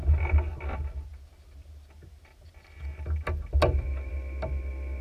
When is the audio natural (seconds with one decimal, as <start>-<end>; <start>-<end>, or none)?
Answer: 0.0-5.0